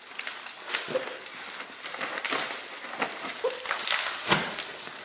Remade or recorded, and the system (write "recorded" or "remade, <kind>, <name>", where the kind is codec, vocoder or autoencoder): recorded